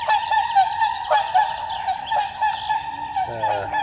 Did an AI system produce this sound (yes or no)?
no